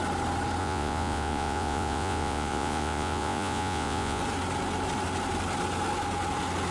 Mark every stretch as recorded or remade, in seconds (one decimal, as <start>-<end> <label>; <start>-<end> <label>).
0.0-0.6 recorded; 0.6-4.2 remade; 4.2-6.7 recorded